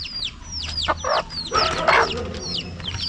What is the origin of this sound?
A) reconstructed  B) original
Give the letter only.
B